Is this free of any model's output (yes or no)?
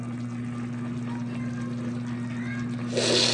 yes